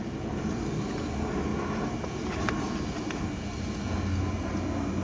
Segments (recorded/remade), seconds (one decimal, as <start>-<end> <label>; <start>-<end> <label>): 0.0-5.0 recorded